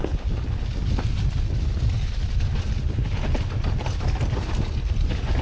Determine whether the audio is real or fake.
real